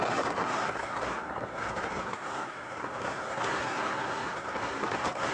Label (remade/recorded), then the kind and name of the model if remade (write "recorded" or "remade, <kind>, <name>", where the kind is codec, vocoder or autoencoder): remade, codec, SNAC